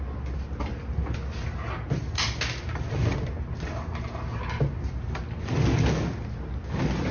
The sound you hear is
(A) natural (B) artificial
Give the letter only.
A